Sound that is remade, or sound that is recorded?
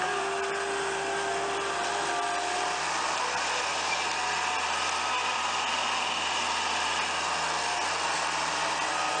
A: recorded